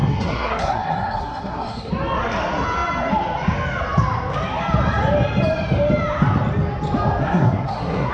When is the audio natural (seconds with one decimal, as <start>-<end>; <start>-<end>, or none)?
1.9-7.2